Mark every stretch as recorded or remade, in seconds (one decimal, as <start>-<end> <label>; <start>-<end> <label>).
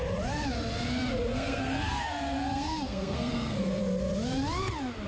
0.0-1.3 recorded; 1.3-3.8 remade; 3.8-5.1 recorded